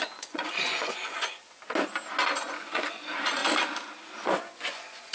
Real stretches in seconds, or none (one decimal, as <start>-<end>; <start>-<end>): 1.6-2.3; 3.4-4.2